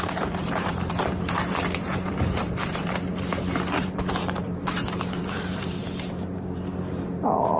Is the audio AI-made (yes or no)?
yes